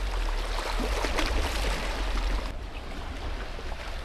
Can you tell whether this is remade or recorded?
recorded